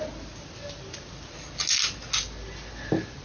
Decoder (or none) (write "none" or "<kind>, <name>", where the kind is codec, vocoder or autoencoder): none